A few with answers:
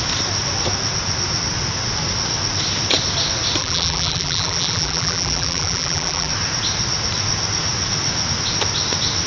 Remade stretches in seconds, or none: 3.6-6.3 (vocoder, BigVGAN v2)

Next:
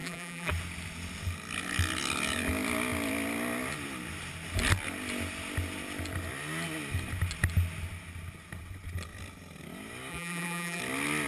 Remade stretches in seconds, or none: 0.0-0.5 (vocoder, BigVGAN v2); 10.1-10.8

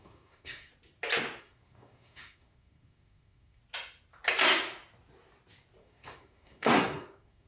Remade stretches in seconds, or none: 0.0-0.7 (codec, SNAC); 1.4-3.6; 5.8-7.5

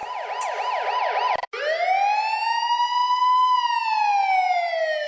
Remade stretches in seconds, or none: none

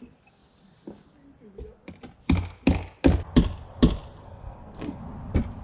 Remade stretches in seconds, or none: 4.2-5.0 (codec, SNAC)